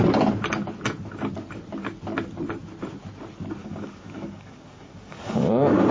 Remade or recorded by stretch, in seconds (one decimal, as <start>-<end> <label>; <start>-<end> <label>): 0.0-3.6 recorded; 3.6-5.5 remade; 5.5-5.9 recorded

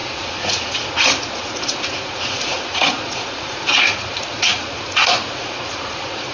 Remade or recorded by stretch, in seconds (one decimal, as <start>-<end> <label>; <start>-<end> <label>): 0.0-6.3 remade